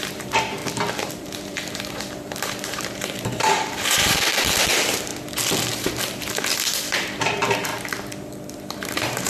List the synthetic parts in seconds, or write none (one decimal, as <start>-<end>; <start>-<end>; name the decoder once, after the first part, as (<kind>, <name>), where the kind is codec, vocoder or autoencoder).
0.0-0.6 (vocoder, BigVGAN v2); 1.1-5.1; 5.7-7.7; 8.5-9.3

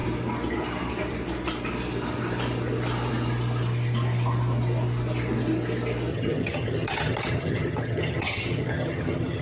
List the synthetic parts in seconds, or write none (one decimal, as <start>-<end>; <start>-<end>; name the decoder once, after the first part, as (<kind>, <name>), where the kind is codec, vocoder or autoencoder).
6.1-9.4 (vocoder, HiFi-GAN)

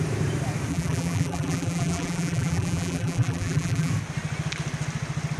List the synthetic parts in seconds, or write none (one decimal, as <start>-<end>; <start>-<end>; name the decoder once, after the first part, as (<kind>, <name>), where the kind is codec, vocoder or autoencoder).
0.7-3.9 (vocoder, BigVGAN v2)

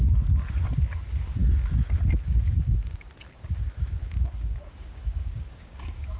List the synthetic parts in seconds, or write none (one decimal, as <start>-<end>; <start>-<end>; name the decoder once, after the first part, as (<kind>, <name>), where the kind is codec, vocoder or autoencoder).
4.0-6.2 (codec, DAC)

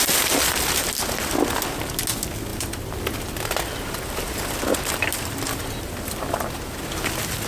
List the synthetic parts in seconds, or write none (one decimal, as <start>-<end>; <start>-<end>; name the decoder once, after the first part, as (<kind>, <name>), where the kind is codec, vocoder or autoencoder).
none

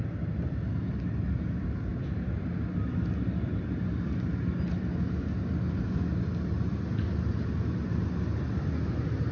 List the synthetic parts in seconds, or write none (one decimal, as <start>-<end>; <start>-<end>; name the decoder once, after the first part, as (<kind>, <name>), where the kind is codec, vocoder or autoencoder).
none

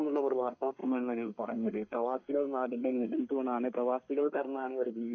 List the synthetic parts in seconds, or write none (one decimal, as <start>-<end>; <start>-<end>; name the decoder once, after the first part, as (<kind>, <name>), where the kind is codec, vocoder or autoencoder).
0.0-3.2 (codec, SNAC); 4.1-5.1

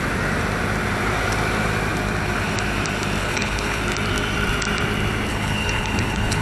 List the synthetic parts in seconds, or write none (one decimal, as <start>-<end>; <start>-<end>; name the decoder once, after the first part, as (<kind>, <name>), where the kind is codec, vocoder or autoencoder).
3.2-3.8 (codec, HILCodec); 5.3-6.4